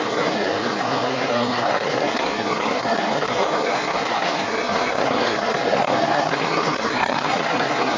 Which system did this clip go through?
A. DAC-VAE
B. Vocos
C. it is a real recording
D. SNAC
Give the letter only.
D